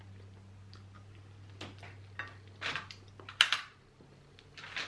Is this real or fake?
real